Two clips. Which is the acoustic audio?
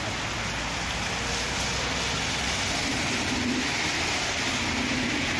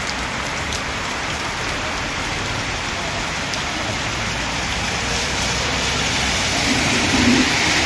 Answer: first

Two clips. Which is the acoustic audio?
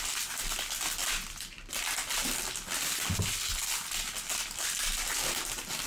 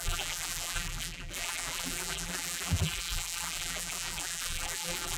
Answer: first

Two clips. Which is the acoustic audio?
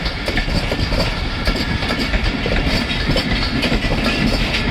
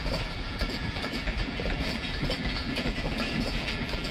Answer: first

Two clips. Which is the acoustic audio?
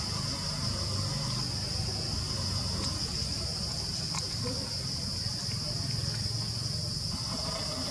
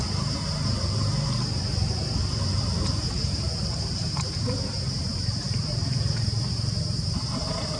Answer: first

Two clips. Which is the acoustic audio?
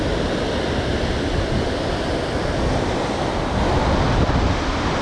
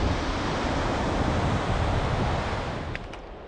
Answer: first